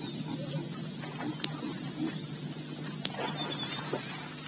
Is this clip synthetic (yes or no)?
no